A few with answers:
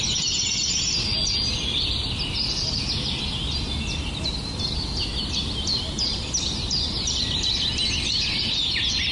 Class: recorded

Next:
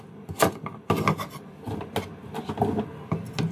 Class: recorded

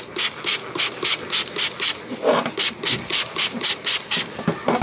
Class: recorded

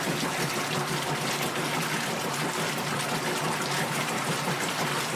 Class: recorded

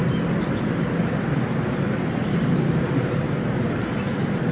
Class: recorded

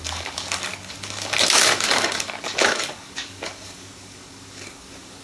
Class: remade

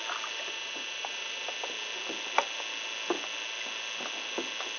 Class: recorded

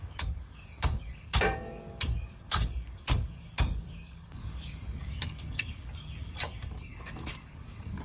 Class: remade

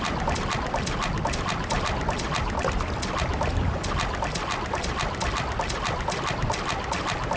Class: recorded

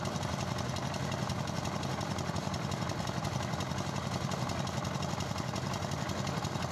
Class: recorded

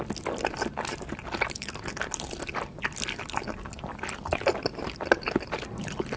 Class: recorded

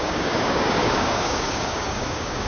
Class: remade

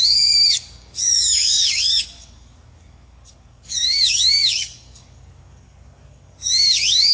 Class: remade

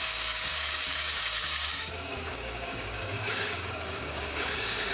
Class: remade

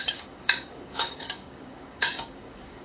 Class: remade